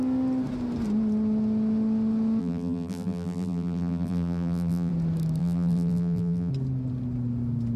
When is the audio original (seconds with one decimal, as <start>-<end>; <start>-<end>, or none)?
0.0-2.4; 4.9-5.4; 6.5-7.8